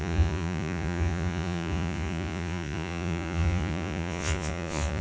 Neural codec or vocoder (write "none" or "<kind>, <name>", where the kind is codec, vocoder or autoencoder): vocoder, Vocos